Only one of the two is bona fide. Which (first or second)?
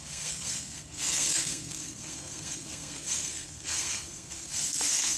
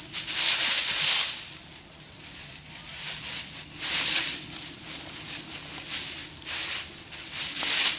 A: second